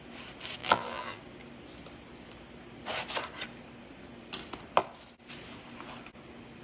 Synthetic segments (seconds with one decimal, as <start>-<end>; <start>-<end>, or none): 0.6-1.2